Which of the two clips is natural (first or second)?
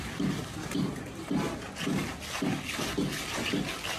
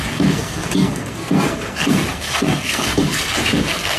first